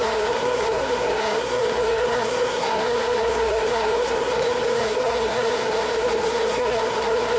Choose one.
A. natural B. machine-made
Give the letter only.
B